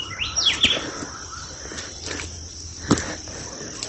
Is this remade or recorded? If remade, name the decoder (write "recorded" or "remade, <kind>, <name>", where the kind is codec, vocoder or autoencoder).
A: recorded